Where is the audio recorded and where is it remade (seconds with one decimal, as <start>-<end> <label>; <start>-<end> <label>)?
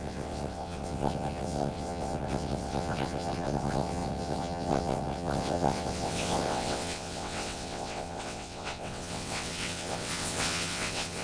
0.0-11.2 remade